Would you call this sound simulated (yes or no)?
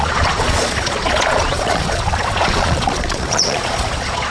yes